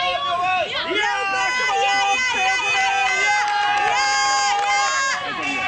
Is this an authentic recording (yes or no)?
yes